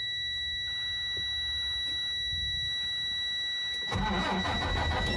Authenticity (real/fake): real